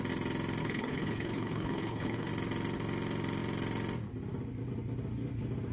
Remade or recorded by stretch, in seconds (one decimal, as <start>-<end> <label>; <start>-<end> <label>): 0.0-0.6 recorded; 0.6-2.3 remade; 2.3-5.7 recorded